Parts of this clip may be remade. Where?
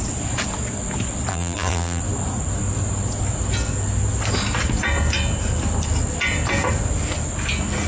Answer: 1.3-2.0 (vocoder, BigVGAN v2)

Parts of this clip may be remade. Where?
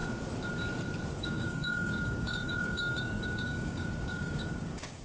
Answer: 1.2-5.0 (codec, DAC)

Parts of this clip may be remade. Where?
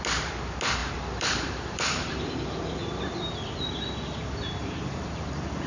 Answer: 0.8-2.3 (vocoder, BigVGAN v2); 4.6-5.7